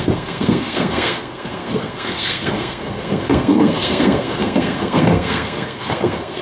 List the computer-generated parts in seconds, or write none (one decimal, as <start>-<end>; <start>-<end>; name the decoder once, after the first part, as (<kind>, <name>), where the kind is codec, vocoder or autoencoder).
0.0-6.4 (codec, SNAC)